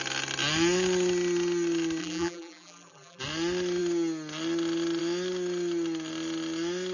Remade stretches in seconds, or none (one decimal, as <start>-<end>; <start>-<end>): 2.0-3.2